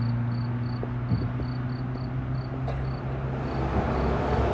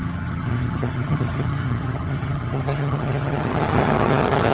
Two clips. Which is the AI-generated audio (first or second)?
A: second